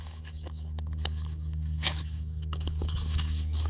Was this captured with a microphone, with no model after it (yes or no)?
no